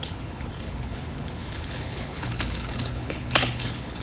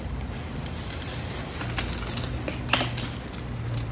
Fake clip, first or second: first